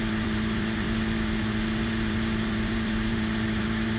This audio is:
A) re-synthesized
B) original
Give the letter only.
A